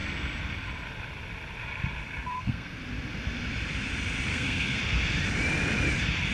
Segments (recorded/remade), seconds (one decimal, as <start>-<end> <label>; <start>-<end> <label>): 0.0-2.3 recorded; 2.3-2.8 remade; 2.8-4.3 recorded; 4.3-4.8 remade; 4.8-6.3 recorded